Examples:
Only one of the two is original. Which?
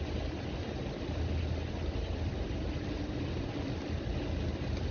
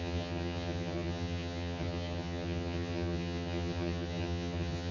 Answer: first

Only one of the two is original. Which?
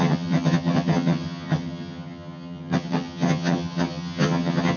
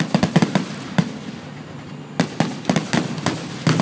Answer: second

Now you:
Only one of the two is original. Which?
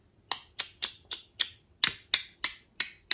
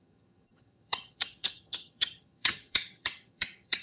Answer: first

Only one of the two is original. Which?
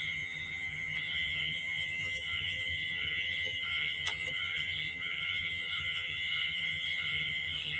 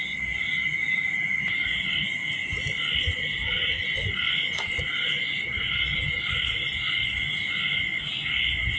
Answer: second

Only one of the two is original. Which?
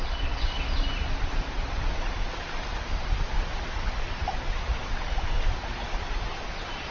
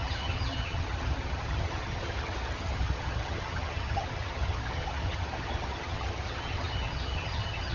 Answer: first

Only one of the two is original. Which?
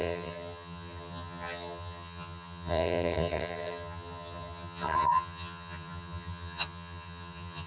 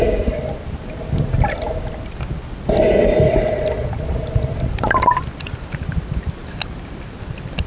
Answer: second